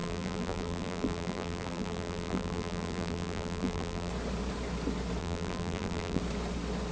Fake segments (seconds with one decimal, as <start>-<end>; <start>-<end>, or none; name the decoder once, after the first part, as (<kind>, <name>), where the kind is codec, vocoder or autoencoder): 0.0-4.1 (vocoder, BigVGAN v2); 5.2-6.2